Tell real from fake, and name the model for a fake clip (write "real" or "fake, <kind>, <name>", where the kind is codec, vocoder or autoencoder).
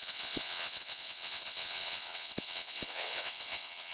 fake, vocoder, WaveNeXt